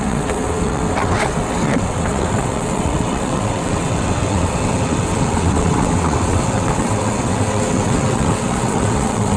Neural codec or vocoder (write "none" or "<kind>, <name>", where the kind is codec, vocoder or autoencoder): vocoder, WaveNeXt